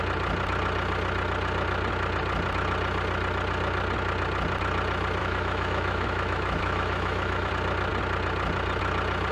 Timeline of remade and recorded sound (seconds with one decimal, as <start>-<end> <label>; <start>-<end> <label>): 0.0-5.2 recorded; 5.2-7.5 remade; 7.5-9.3 recorded

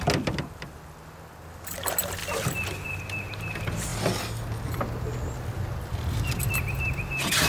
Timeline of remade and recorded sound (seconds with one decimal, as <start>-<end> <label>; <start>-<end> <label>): 0.0-2.2 recorded; 2.2-3.0 remade; 3.0-7.5 recorded